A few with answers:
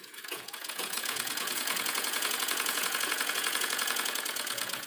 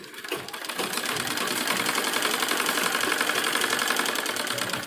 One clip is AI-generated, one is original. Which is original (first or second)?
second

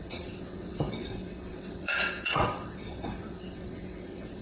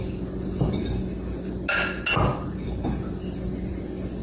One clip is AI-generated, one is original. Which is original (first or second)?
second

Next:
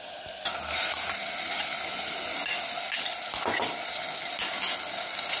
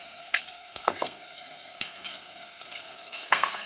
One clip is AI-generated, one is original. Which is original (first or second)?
first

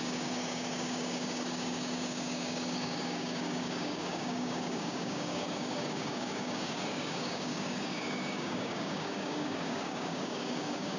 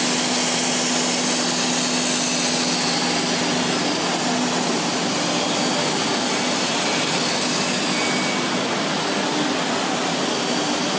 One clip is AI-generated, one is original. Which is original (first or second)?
second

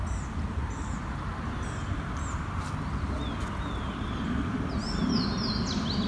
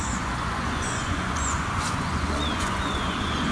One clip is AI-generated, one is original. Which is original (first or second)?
first